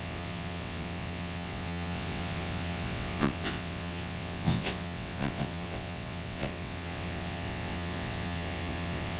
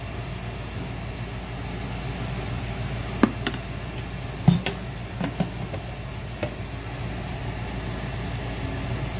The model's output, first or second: first